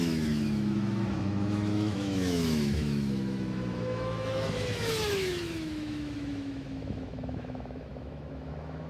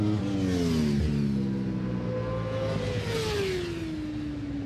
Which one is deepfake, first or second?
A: first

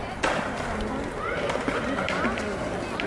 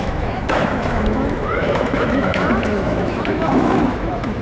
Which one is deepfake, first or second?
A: second